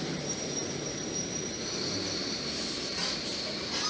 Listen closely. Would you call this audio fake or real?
fake